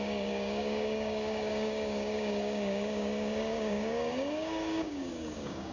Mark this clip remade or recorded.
remade